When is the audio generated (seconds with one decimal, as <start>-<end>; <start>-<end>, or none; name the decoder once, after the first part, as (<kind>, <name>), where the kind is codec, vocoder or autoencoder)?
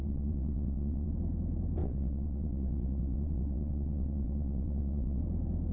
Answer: 0.0-1.1 (vocoder, WaveNeXt); 1.8-5.2